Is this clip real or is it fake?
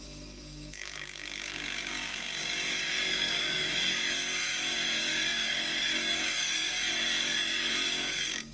fake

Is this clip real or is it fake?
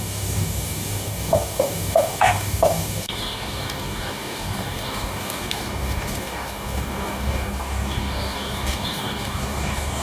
fake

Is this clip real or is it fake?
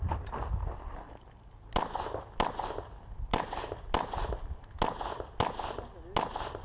real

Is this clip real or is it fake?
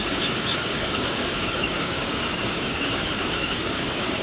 fake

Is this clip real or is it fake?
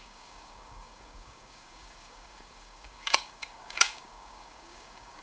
fake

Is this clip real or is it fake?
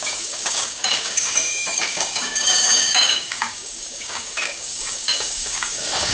fake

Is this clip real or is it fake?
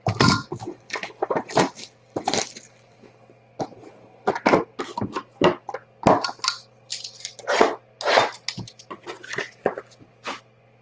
real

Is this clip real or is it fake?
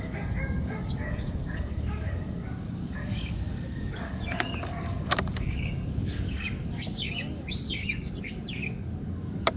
fake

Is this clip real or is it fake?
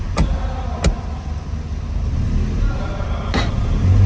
real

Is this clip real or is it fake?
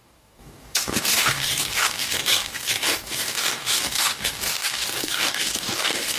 fake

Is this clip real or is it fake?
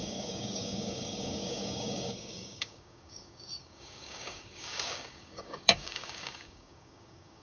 fake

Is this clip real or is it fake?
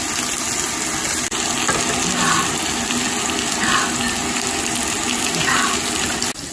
real